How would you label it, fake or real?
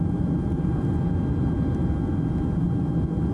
real